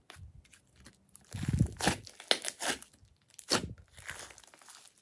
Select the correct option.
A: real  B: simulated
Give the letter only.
A